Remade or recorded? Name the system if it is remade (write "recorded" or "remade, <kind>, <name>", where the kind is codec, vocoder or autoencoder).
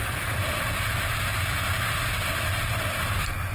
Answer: recorded